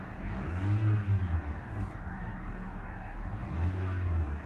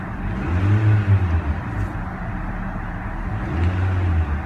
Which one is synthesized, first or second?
first